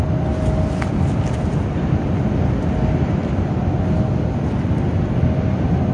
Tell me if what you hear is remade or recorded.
recorded